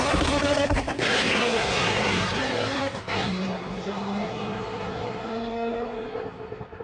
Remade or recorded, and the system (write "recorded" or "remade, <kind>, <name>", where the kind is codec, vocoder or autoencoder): remade, codec, SNAC